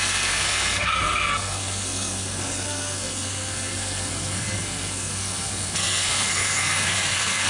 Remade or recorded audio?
remade